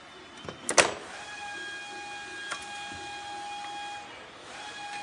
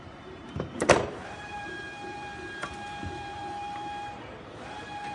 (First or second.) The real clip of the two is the first